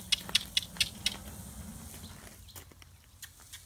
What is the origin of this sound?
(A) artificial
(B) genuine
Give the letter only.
B